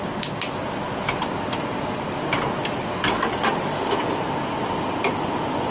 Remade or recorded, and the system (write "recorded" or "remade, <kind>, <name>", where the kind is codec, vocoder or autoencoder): recorded